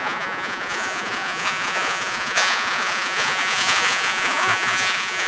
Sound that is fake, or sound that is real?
fake